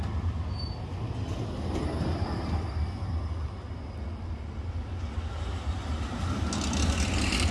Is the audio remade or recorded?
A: recorded